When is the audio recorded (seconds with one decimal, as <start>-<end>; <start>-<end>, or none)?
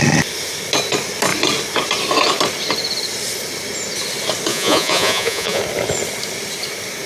0.0-4.5; 5.6-7.1